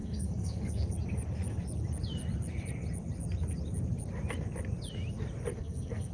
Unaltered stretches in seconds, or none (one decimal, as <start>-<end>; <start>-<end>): 0.9-5.5